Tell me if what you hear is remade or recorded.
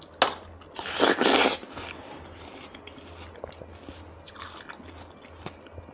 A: recorded